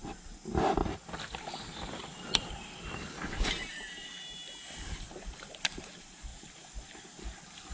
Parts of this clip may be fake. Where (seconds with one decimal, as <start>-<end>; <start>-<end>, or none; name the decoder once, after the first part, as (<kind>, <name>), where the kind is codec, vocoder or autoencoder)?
0.0-0.8 (vocoder, BigVGAN v2); 3.7-6.3